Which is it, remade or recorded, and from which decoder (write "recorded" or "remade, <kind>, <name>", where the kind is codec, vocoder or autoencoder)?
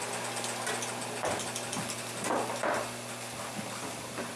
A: recorded